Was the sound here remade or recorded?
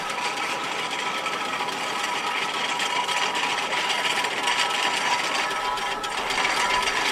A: recorded